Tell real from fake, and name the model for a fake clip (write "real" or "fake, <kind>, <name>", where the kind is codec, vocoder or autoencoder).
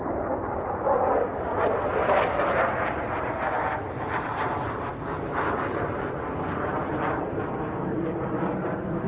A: real